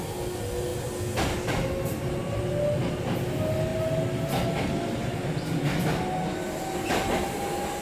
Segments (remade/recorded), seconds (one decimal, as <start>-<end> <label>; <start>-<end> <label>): 0.0-7.8 recorded